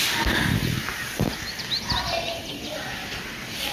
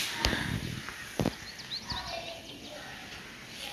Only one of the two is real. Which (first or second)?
second